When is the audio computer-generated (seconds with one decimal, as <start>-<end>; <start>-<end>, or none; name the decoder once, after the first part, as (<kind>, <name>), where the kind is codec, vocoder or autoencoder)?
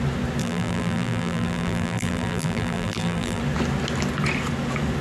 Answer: 0.4-3.4 (vocoder, BigVGAN v2)